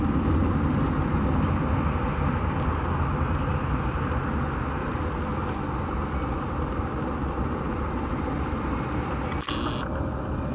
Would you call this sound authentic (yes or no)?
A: yes